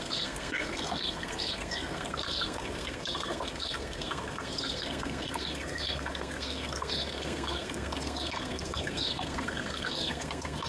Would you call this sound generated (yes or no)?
yes